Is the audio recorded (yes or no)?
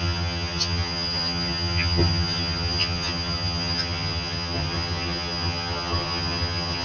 no